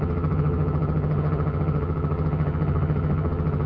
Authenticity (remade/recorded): remade